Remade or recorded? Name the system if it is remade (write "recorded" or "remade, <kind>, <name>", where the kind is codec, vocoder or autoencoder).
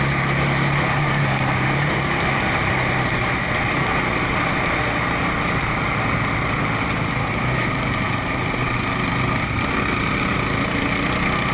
recorded